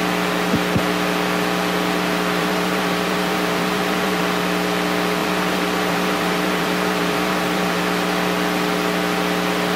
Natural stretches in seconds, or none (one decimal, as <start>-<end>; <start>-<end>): 0.0-2.4; 4.2-5.2; 7.8-9.8